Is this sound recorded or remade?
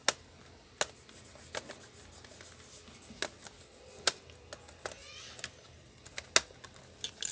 recorded